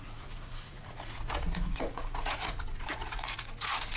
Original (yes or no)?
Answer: no